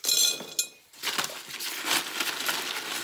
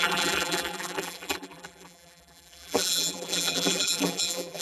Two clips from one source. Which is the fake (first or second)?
second